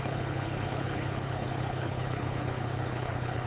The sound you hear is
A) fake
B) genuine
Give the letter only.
A